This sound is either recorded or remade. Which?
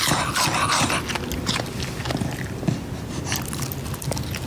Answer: recorded